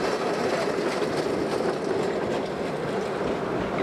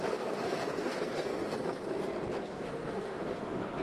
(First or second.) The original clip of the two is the first